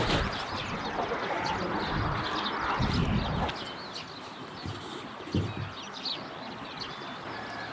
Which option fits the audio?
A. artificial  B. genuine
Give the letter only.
B